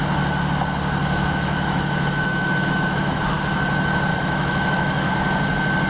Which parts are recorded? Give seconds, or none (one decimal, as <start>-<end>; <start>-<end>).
0.0-1.0; 3.2-4.1; 5.1-5.9